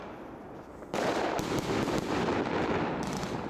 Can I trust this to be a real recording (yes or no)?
yes